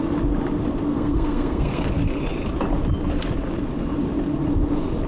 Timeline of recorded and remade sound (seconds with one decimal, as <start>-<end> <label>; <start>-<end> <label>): 0.0-0.9 recorded; 0.9-1.9 remade; 1.9-5.1 recorded